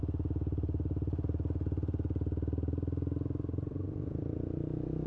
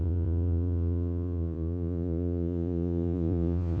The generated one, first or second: second